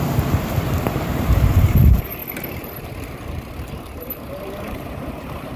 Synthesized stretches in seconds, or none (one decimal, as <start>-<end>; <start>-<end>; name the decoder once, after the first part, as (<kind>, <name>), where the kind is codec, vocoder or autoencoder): 0.0-2.2 (vocoder, BigVGAN v2); 4.0-5.6